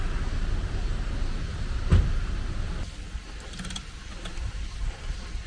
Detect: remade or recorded recorded